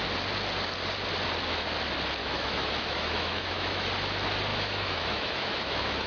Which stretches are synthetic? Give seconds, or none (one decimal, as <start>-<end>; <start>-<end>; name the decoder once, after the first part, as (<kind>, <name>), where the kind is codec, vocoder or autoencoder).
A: 2.2-3.9 (autoencoder, DAC-VAE); 4.5-6.1